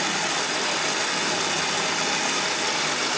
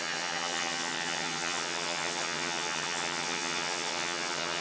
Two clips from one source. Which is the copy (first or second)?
second